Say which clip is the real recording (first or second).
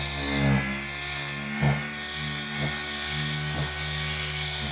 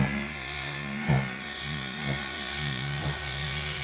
first